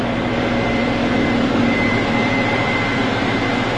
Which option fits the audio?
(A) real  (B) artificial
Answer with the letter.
B